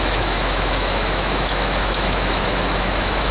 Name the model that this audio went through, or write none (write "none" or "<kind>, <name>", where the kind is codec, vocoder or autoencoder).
autoencoder, DAC-VAE